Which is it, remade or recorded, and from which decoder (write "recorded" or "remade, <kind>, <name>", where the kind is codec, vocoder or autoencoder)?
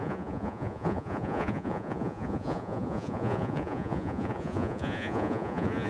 remade, vocoder, Vocos